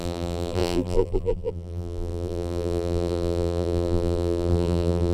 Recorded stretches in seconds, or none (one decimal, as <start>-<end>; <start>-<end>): none